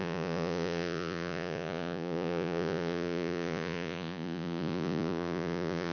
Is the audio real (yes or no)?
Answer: no